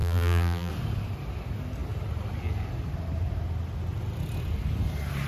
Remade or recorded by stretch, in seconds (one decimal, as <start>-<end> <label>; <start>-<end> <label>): 0.0-0.7 remade; 0.7-5.3 recorded